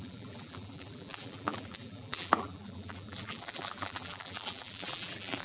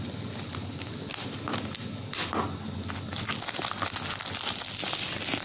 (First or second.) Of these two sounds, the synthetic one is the first